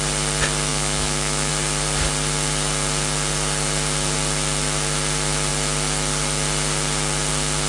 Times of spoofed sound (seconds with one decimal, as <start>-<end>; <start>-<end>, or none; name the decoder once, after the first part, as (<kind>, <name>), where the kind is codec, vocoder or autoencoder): 0.7-1.5 (autoencoder, DAC-VAE)